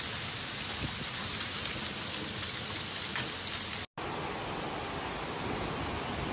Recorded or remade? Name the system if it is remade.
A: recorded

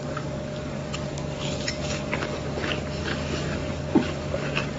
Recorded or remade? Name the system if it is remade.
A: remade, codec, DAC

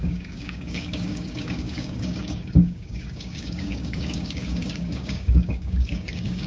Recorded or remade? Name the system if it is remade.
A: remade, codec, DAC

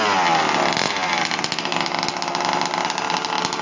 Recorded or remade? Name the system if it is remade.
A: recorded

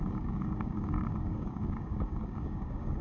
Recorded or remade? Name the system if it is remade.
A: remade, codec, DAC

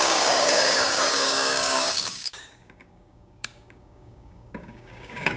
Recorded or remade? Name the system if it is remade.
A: remade, codec, DAC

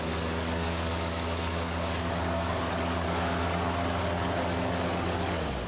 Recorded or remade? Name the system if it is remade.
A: remade, codec, DAC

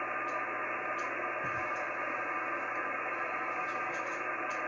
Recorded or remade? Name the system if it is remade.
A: recorded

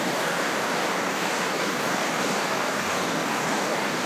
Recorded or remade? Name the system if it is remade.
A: remade, codec, DAC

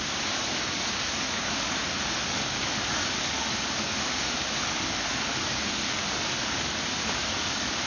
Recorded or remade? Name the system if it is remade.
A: remade, codec, DAC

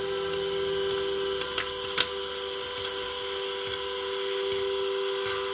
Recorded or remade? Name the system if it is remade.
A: recorded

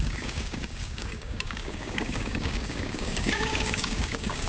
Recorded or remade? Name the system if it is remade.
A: remade, codec, DAC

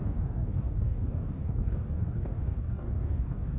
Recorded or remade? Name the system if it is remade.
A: remade, codec, DAC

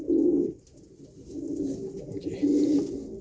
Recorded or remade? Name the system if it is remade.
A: recorded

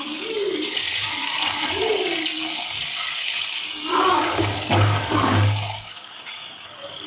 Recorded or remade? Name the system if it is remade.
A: remade, codec, DAC